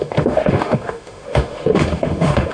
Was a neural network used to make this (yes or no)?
yes